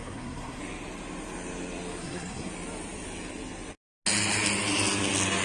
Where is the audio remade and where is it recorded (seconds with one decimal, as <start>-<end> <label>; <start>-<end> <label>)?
0.0-0.6 remade; 0.6-2.0 recorded; 2.0-2.5 remade; 2.5-5.4 recorded